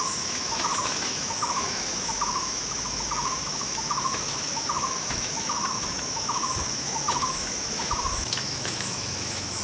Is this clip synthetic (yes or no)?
yes